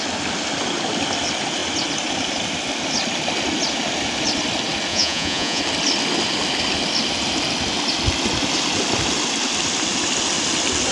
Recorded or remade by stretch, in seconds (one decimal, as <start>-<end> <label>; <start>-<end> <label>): 0.0-4.9 recorded; 4.9-5.6 remade; 5.6-10.9 recorded